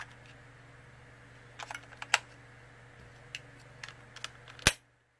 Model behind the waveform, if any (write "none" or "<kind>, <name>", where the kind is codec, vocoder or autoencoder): none